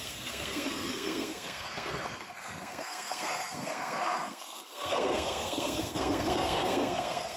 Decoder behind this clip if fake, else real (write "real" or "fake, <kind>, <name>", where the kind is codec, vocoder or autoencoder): fake, codec, SNAC